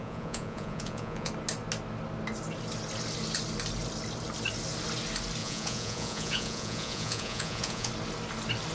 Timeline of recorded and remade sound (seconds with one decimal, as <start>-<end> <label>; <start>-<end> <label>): 0.0-1.3 remade; 1.3-5.4 recorded; 5.4-7.9 remade; 7.9-8.7 recorded